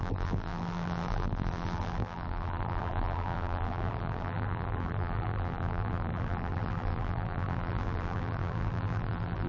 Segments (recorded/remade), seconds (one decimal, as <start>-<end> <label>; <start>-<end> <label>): 0.0-9.5 remade